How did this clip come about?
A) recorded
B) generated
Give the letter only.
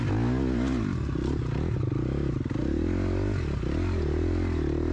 A